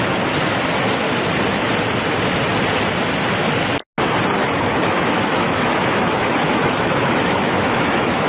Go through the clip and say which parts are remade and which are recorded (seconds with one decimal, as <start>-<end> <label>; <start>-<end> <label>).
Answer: 0.0-4.4 recorded; 4.4-8.3 remade